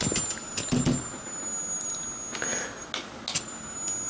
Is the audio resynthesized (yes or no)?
no